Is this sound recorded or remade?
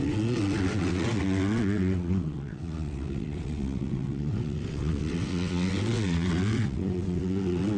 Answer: remade